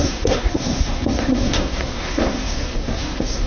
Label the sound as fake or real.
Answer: fake